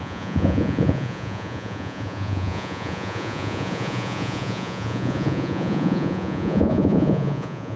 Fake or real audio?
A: fake